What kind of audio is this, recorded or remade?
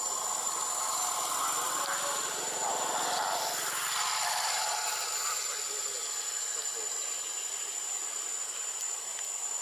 recorded